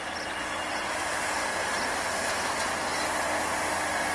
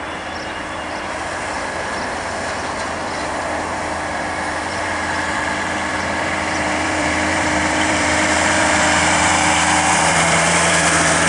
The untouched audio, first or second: first